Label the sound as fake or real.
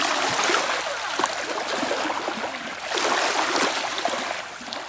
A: real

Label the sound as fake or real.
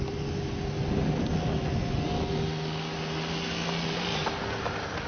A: real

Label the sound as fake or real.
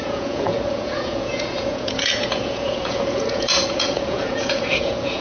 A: fake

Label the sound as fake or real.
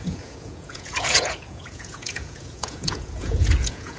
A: fake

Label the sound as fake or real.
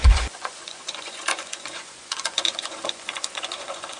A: fake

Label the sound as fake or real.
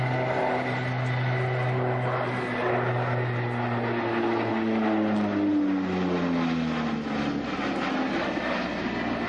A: real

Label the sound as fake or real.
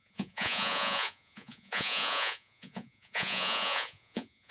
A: fake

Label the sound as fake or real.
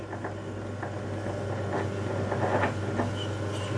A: real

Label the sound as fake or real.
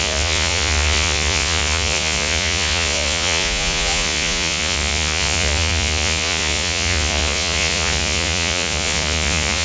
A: fake